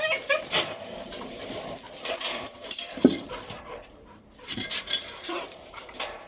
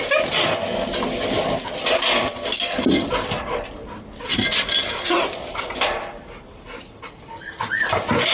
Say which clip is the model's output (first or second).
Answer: first